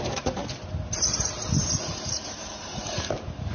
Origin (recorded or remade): remade